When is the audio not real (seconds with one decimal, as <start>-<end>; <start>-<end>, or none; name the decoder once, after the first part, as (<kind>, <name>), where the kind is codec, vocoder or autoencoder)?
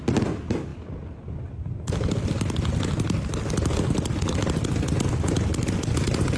none